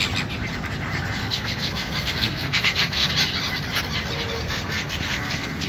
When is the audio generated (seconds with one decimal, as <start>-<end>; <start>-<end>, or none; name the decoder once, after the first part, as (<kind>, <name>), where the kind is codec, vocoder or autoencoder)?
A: 1.2-3.1 (codec, SNAC); 4.4-5.7